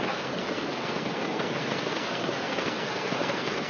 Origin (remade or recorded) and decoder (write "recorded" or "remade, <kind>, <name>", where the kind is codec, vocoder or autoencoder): remade, codec, SNAC